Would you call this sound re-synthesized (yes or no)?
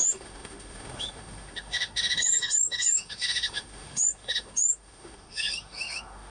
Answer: yes